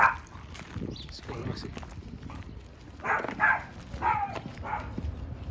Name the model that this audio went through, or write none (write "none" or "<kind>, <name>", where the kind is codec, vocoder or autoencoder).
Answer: none